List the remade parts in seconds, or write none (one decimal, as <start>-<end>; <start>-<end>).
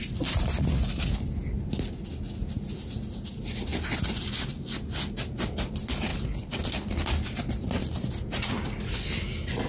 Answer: none